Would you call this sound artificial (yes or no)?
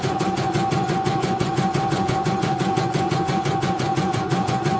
yes